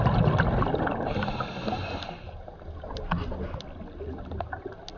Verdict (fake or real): real